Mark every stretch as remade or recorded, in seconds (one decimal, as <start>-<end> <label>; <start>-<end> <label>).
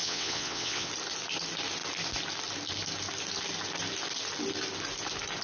0.0-0.9 remade; 0.9-5.4 recorded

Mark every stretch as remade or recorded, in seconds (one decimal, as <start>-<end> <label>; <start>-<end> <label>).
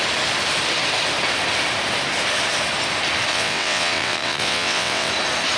0.0-3.3 recorded; 3.3-5.1 remade; 5.1-5.6 recorded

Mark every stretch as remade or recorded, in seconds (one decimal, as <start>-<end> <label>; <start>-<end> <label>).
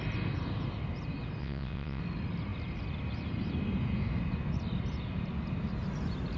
0.0-1.4 recorded; 1.4-2.0 remade; 2.0-6.4 recorded